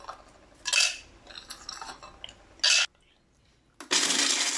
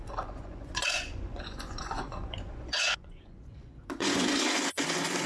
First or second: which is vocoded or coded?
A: second